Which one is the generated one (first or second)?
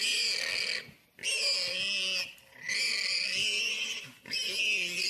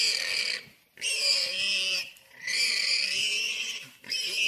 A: second